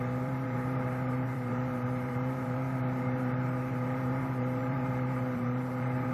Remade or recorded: remade